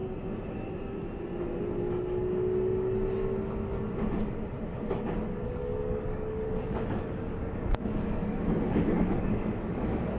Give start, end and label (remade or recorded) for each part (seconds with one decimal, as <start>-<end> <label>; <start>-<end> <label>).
0.0-4.7 recorded; 4.7-10.2 remade